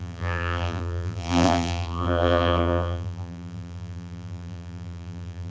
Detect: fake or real fake